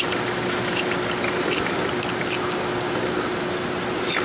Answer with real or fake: real